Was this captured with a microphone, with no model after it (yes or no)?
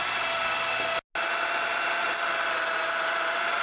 yes